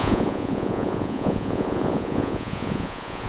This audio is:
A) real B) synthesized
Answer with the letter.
B